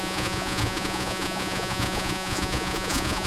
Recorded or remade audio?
remade